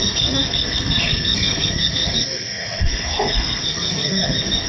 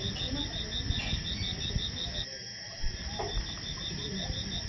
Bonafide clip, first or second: second